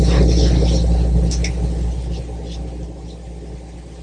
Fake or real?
real